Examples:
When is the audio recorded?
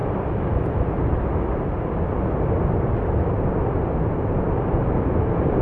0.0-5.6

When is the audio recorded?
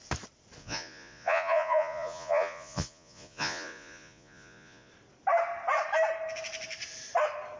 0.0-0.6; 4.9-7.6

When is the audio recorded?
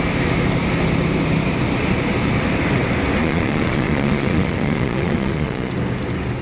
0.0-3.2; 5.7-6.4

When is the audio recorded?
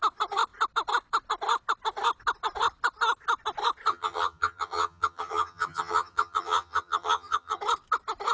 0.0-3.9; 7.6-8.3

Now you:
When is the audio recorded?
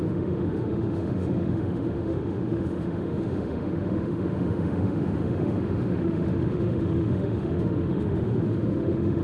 none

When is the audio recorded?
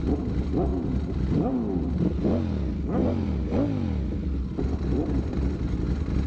0.0-6.3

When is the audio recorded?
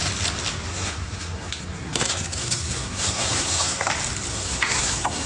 0.0-0.7; 3.9-4.3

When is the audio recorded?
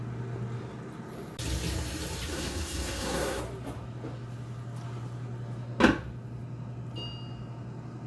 0.0-2.3; 3.4-8.1